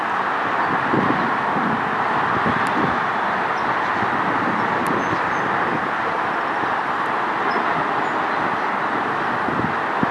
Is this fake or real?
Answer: real